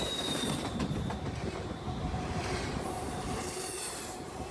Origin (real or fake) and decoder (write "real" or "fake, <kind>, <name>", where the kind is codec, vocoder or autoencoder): fake, vocoder, BigVGAN v2